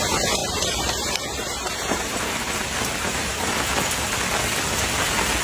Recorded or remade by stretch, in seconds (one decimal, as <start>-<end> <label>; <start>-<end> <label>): 0.0-0.4 recorded; 0.4-3.6 remade; 3.6-5.4 recorded